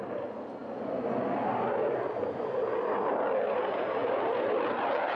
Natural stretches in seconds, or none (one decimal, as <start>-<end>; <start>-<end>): 0.0-5.1